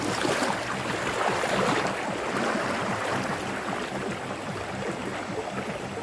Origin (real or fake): real